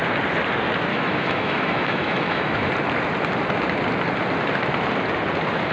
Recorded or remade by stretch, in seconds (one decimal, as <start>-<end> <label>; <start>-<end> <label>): 0.0-0.9 recorded; 0.9-2.7 remade; 2.7-5.7 recorded

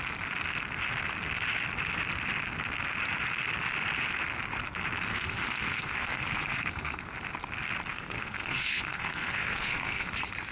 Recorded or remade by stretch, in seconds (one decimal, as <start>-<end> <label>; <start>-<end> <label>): 0.0-5.1 recorded; 5.1-7.1 remade; 7.1-7.9 recorded; 7.9-10.1 remade; 10.1-10.5 recorded

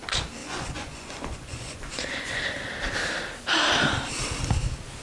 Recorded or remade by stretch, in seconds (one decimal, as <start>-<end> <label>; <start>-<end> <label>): 0.0-0.4 recorded; 0.4-2.4 remade; 2.4-5.0 recorded

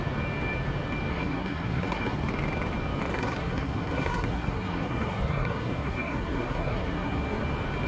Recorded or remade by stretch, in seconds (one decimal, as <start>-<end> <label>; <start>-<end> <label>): 0.0-1.1 recorded; 1.1-2.2 remade; 2.2-3.1 recorded; 3.1-7.4 remade; 7.4-7.9 recorded

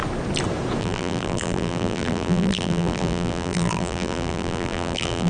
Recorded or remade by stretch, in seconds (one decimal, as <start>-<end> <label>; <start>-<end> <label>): 0.0-0.8 recorded; 0.8-5.3 remade

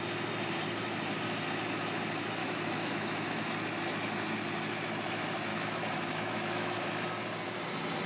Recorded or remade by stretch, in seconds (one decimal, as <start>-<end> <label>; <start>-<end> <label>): 0.0-2.4 recorded; 2.4-3.5 remade; 3.5-5.5 recorded; 5.5-6.8 remade; 6.8-8.1 recorded

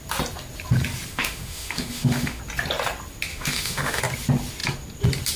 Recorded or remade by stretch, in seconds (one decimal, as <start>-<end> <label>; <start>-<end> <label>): 0.0-1.1 recorded; 1.1-2.4 remade; 2.4-3.3 recorded; 3.3-4.0 remade; 4.0-5.4 recorded

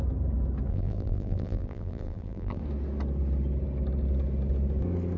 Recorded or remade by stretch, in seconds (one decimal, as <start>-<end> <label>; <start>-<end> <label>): 0.0-0.7 recorded; 0.7-2.6 remade; 2.6-5.2 recorded